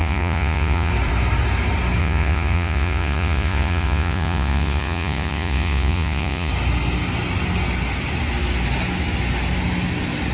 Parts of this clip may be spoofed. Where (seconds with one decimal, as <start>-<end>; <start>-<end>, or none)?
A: 0.0-0.9; 2.0-6.5